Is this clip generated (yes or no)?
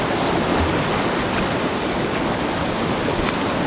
no